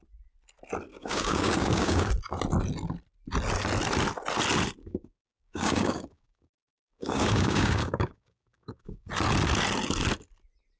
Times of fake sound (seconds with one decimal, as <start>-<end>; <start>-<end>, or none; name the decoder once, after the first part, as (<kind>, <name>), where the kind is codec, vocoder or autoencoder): 0.9-2.1 (codec, DAC); 4.8-9.1